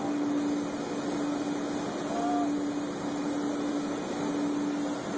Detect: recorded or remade recorded